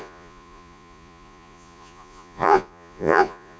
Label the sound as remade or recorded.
remade